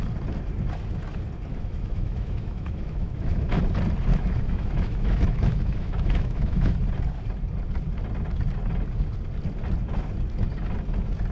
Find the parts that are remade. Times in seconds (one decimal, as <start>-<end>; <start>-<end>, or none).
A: 1.5-3.6; 4.1-6.8